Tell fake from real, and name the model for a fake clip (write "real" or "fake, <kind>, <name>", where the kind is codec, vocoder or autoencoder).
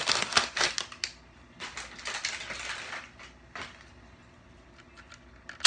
real